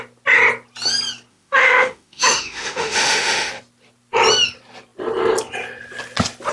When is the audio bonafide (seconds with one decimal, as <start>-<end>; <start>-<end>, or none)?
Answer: 0.0-1.3; 3.5-6.5